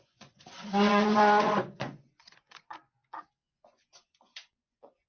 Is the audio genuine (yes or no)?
no